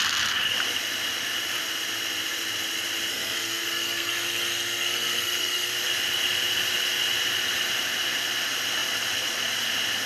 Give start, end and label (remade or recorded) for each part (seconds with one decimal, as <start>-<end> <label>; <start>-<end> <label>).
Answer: 0.0-3.1 recorded; 3.1-5.7 remade; 5.7-10.1 recorded